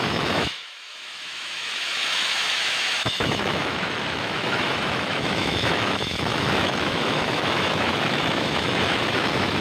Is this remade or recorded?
remade